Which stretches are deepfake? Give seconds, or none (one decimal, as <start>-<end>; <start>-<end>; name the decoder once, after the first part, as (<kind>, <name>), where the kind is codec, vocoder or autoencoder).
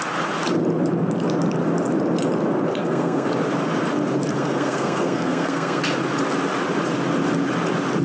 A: 2.8-3.3 (codec, SNAC); 4.3-5.8